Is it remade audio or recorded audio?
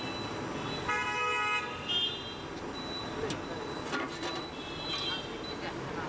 recorded